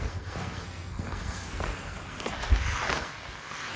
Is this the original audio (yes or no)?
no